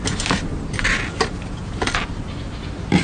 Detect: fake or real real